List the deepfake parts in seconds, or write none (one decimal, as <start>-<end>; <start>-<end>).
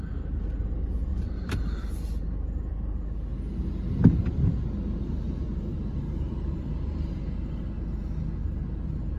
1.1-1.9; 5.7-7.4